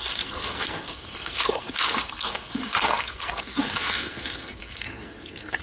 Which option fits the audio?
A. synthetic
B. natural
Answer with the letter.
A